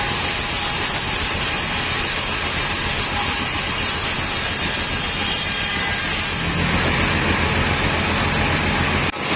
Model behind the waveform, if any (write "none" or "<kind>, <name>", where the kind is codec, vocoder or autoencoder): none